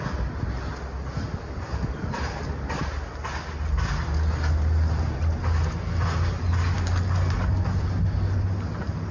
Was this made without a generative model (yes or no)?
yes